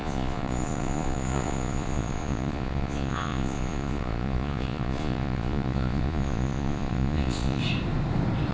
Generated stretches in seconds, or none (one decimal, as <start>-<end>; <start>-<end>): 0.0-7.6

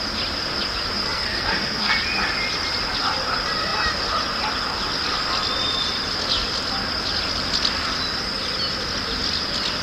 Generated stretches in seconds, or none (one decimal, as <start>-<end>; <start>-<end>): 1.0-1.9

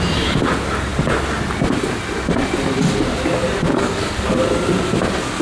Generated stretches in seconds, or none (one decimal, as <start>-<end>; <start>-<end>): 3.7-4.3

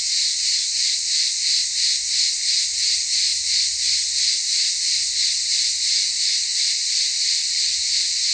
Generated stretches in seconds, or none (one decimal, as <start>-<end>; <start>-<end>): 3.3-5.2; 6.5-7.8

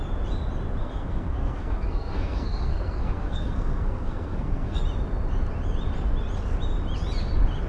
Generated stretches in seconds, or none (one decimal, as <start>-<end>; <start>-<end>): 0.8-4.8

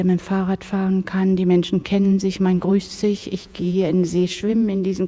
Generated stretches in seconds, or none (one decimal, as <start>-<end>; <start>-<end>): 1.8-2.7; 3.2-5.1

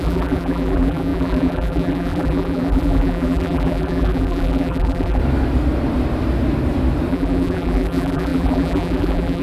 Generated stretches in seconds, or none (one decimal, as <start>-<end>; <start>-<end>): 0.0-5.2; 7.1-9.4